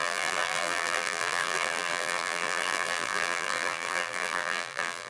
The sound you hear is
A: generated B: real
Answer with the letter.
A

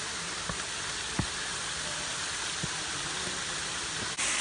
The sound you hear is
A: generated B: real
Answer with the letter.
B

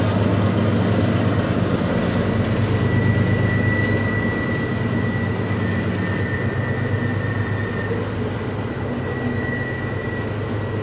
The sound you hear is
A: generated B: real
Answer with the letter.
B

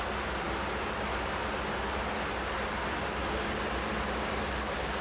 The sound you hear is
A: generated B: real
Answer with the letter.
B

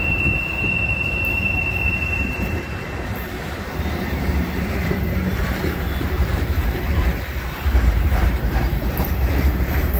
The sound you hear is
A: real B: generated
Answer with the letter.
B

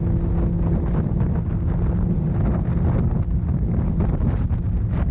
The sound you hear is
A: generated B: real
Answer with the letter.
B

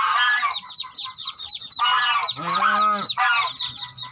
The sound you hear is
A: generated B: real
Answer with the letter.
B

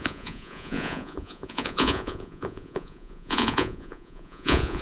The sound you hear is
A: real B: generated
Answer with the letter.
B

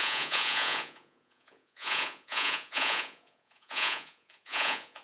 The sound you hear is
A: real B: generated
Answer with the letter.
B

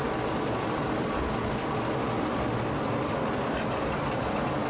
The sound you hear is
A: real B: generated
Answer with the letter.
A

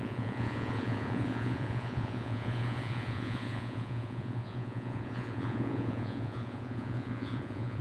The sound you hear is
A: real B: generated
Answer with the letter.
B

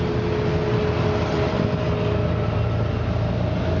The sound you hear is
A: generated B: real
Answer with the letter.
B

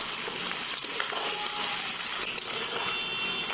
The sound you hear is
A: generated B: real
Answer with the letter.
B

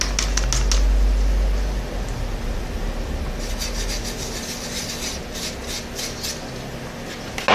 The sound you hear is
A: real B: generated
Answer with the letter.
A